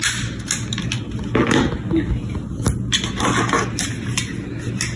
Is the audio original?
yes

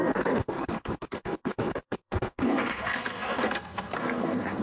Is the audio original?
no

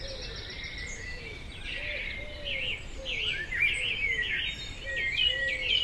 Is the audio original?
yes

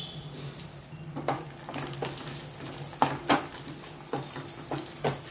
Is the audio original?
yes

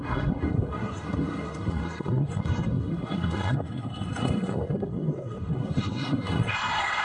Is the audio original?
no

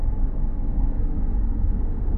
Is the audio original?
no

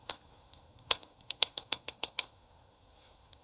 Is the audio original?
no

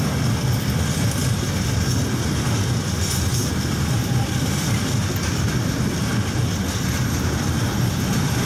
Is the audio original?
yes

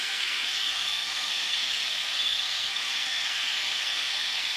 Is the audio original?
no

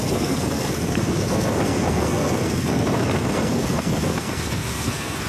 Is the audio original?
no